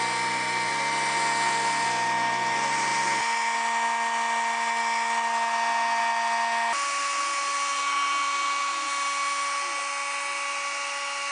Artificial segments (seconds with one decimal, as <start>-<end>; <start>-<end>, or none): none